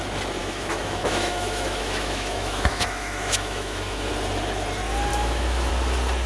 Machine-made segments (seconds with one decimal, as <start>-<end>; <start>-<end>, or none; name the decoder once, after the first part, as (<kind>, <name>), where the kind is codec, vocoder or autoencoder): 0.4-4.1 (autoencoder, DAC-VAE); 5.1-5.7